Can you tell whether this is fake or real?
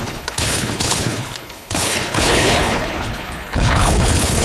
fake